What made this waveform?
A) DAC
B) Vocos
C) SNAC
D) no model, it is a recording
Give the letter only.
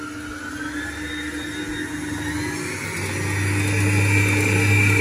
D